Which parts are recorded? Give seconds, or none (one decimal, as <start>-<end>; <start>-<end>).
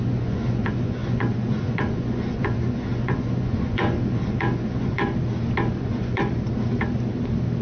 5.0-5.7; 6.2-7.6